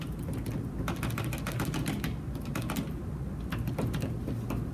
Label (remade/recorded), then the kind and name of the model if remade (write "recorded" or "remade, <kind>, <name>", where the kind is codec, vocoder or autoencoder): recorded